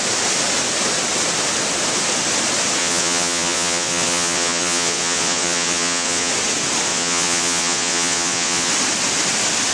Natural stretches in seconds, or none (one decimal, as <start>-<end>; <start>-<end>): 0.0-2.8; 6.3-6.9; 8.7-9.7